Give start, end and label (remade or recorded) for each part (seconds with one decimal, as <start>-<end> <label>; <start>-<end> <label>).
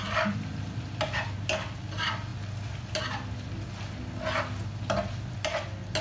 0.0-6.0 recorded